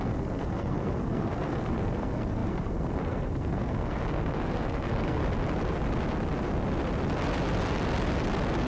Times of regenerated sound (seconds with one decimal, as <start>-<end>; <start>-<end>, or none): 0.0-5.2